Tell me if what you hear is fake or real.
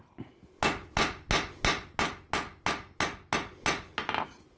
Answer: real